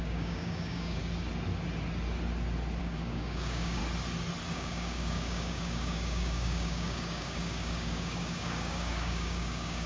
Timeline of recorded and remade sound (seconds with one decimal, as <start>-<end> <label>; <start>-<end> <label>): 0.0-1.0 remade; 1.0-2.8 recorded; 2.8-3.8 remade; 3.8-4.5 recorded; 4.5-9.9 remade